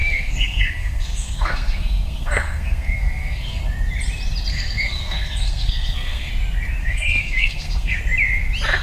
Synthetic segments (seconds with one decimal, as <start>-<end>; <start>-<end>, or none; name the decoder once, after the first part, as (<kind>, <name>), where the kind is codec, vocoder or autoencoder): 0.0-3.6 (codec, SNAC); 4.5-6.3; 6.8-8.0